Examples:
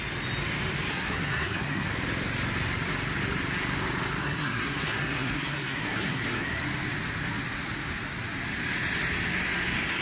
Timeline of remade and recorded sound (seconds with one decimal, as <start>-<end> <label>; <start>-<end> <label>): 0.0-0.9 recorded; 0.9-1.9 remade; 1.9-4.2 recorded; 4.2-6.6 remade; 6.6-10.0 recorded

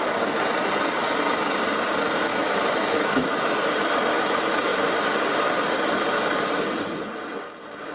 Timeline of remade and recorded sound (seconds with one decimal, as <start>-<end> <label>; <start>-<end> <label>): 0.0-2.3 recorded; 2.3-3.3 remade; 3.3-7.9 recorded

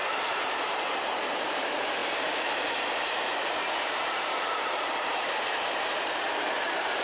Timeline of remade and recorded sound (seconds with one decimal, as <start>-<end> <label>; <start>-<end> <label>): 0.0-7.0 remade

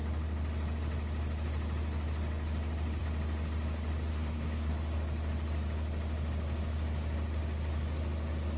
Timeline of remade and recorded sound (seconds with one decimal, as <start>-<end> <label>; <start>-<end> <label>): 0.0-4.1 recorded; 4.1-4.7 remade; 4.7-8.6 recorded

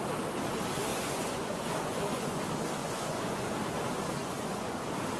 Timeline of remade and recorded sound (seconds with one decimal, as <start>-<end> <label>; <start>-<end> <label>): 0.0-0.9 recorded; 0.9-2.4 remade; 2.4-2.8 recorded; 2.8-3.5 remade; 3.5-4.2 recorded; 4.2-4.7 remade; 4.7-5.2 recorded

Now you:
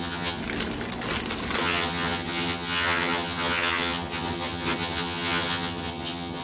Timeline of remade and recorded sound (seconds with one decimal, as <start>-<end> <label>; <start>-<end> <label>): 0.0-0.4 remade; 0.4-1.6 recorded; 1.6-6.4 remade

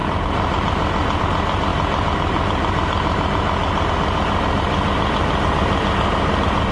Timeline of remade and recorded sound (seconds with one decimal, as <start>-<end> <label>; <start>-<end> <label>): 0.0-6.7 recorded

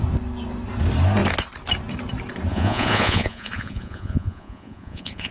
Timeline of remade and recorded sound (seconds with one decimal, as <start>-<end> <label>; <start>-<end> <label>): 0.0-2.5 recorded; 2.5-5.3 remade